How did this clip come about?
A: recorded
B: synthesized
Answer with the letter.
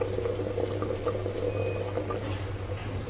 A